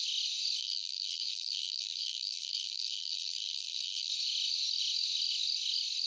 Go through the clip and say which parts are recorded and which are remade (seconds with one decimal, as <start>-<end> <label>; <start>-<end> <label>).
0.0-0.6 recorded; 0.6-4.1 remade; 4.1-6.1 recorded